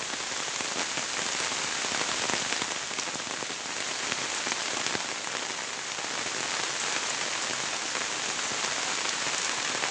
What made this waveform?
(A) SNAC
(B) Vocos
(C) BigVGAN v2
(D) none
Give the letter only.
D